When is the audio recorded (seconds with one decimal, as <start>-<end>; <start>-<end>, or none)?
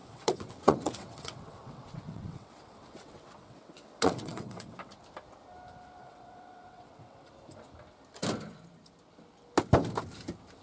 4.9-6.0; 7.3-10.6